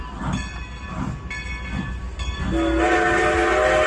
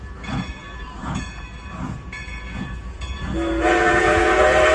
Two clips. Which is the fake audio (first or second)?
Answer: second